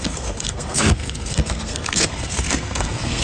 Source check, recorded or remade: remade